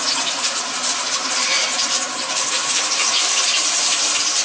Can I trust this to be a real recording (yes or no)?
no